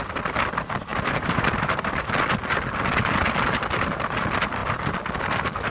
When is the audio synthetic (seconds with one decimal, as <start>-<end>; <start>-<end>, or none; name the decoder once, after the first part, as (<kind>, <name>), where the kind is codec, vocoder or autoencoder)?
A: 0.9-2.1 (vocoder, BigVGAN v2)